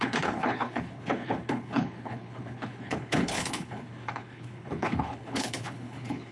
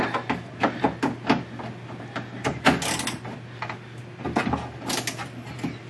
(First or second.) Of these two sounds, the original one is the second